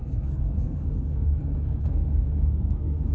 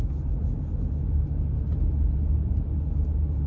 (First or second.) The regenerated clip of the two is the first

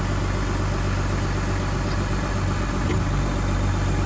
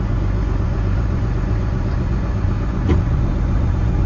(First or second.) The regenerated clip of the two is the second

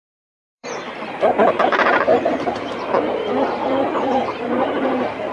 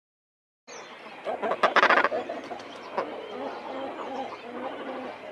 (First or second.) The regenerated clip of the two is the first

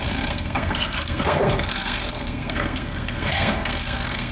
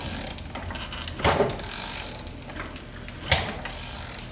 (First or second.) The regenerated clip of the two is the first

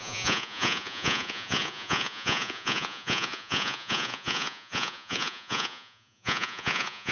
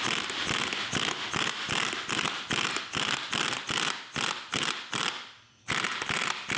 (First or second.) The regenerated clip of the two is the first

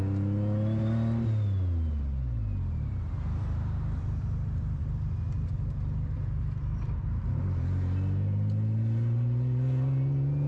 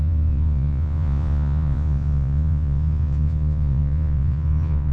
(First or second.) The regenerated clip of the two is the second